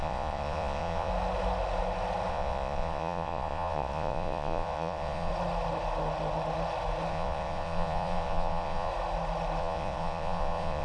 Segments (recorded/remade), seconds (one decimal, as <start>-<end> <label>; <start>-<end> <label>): 0.0-1.1 remade; 1.1-2.3 recorded; 2.3-5.3 remade; 5.3-7.1 recorded; 7.1-8.9 remade; 8.9-9.6 recorded; 9.6-10.8 remade